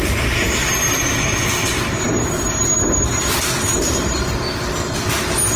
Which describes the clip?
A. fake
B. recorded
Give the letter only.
A